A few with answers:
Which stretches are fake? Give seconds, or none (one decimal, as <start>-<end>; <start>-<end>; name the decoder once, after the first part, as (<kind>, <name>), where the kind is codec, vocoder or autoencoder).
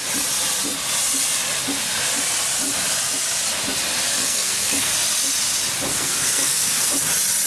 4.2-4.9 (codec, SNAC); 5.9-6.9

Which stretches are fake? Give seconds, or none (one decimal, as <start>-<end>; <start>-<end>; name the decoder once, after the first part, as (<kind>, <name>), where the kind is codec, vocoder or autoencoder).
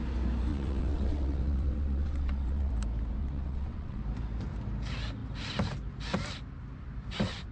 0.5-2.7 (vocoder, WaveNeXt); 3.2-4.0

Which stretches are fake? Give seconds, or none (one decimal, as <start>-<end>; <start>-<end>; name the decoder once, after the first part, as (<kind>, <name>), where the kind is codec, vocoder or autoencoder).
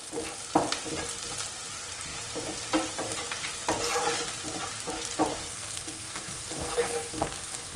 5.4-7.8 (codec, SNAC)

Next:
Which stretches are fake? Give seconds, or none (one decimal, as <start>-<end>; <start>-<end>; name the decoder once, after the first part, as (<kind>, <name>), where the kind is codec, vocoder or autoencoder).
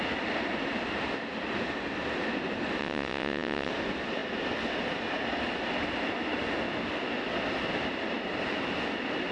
2.8-3.7 (vocoder, WaveNeXt)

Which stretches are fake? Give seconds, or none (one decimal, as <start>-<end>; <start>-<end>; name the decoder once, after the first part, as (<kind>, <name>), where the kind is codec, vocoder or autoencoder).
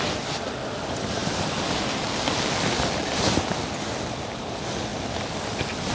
none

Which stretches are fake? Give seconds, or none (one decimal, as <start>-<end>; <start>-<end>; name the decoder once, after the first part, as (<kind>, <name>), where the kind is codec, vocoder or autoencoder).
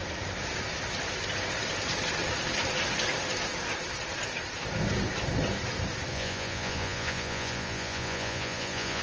6.1-9.0 (vocoder, Vocos)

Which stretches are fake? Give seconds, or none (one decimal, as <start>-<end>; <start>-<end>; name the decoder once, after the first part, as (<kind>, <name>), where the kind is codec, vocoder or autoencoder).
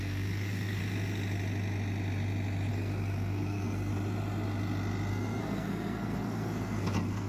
0.0-0.8 (codec, SNAC); 2.7-3.9; 5.1-7.3